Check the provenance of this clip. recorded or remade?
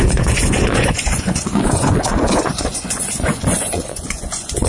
remade